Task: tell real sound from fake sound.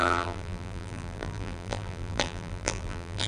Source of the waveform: fake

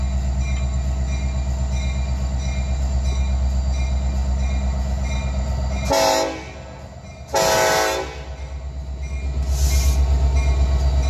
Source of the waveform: real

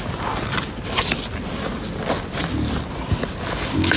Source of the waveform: real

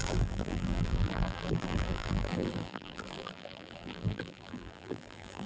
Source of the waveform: fake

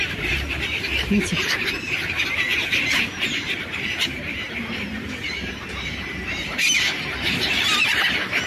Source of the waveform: fake